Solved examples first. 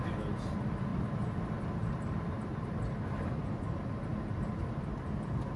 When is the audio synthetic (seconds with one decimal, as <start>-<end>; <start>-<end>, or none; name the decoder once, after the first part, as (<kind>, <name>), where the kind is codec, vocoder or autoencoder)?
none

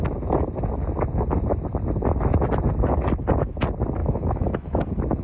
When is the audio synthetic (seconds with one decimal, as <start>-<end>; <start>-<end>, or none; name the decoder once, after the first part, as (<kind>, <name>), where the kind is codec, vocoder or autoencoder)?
4.0-4.8 (autoencoder, DAC-VAE)

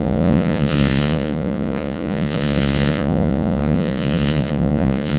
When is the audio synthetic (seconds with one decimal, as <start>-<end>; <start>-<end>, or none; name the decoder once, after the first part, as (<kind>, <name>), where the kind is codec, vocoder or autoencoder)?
0.0-5.2 (vocoder, Vocos)

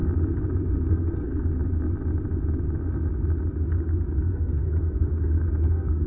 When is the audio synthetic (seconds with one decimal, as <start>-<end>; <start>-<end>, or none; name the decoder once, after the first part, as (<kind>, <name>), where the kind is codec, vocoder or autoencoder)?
0.9-1.5 (codec, SNAC); 4.2-6.1

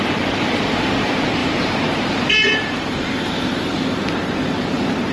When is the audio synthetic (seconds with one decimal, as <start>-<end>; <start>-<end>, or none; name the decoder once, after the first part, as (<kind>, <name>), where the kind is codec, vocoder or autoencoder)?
0.0-5.1 (vocoder, BigVGAN v2)